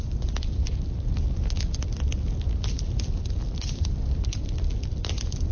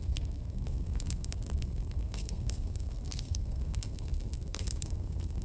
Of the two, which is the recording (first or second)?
first